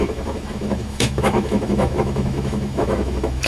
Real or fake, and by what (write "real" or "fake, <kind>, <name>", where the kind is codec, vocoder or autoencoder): fake, autoencoder, DAC-VAE